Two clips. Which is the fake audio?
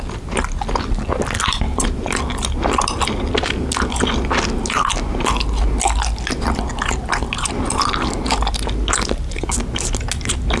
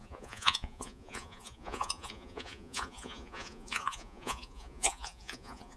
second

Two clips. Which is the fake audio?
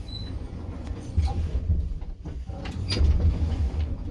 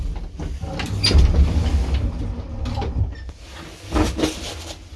first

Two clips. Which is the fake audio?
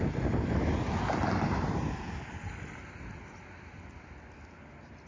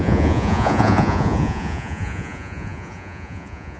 second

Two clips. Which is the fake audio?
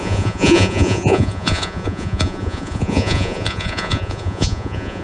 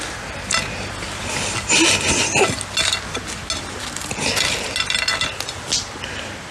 first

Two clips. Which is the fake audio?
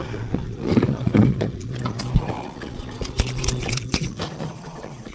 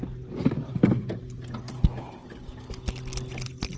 first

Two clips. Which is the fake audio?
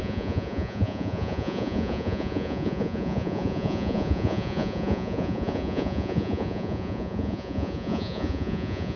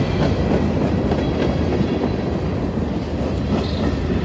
first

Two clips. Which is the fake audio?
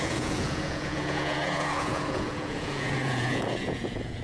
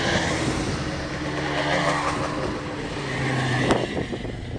first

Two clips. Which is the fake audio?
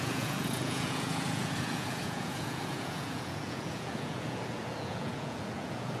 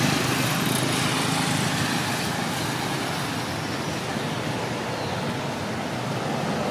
first